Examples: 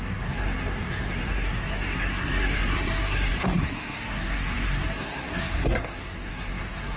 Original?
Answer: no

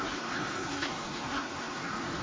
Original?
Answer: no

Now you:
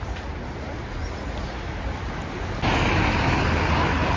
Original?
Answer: yes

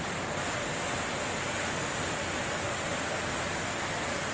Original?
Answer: yes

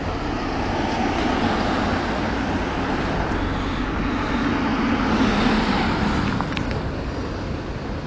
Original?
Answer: yes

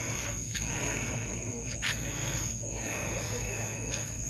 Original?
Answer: no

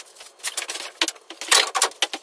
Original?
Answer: yes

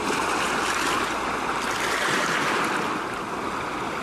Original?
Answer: yes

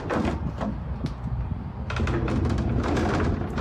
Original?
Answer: yes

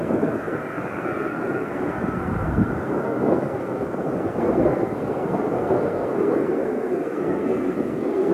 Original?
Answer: no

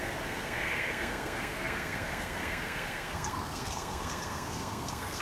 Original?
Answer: no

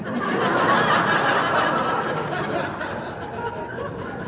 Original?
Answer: yes